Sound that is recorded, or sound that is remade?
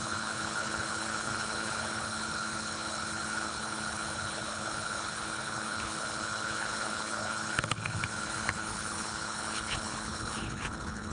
remade